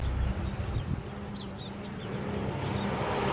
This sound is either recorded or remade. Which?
recorded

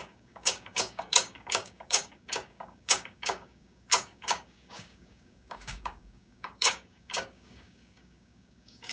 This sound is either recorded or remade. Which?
remade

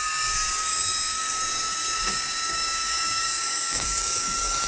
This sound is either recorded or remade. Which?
remade